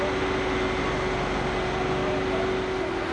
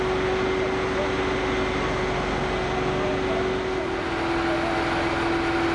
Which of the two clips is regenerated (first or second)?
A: first